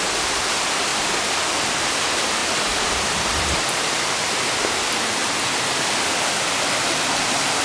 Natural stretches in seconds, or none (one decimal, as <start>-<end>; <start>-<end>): 0.0-0.9; 1.7-2.4; 4.6-7.6